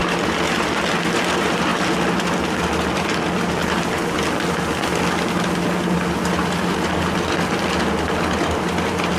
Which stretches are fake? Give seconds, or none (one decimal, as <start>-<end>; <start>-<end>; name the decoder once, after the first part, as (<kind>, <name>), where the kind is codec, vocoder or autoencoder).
none